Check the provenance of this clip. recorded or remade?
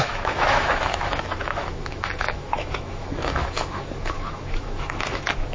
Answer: remade